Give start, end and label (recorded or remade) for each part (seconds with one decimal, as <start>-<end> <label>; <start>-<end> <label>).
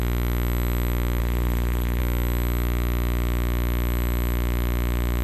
0.0-1.2 recorded; 1.2-2.0 remade; 2.0-5.2 recorded